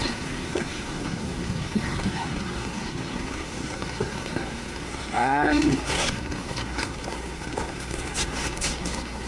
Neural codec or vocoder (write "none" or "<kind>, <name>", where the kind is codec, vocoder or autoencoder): codec, SNAC